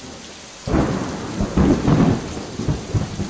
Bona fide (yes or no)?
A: yes